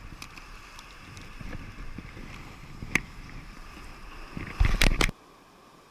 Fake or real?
fake